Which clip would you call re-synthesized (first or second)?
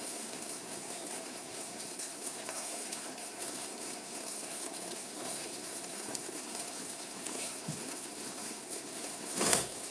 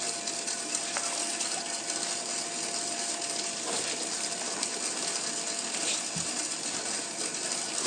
first